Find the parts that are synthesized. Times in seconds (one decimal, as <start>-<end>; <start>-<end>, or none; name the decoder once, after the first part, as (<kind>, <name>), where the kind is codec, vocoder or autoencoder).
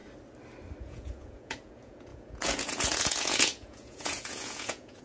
0.8-5.0 (vocoder, Vocos)